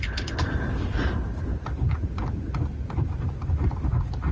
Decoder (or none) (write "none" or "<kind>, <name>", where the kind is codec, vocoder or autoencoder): none